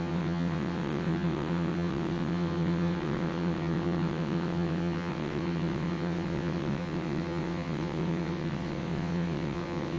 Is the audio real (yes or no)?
no